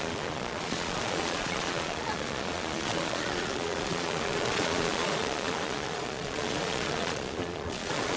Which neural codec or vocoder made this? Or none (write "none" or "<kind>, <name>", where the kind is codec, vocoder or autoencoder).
vocoder, Vocos